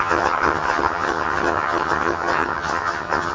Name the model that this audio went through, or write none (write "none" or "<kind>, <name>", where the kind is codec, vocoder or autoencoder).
vocoder, HiFi-GAN